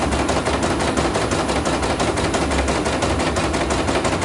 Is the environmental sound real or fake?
real